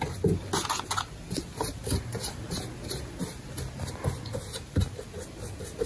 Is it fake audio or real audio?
real